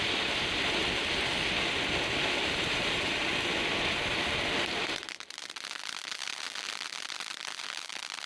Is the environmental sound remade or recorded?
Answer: recorded